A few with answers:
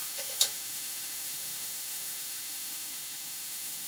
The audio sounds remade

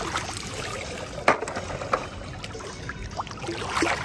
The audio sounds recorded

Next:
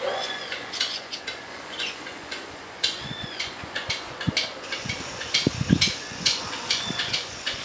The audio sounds remade